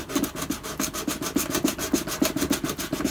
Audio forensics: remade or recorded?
recorded